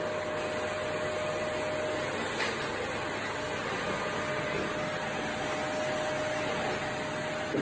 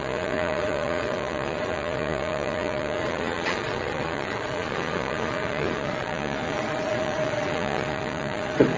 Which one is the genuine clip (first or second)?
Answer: first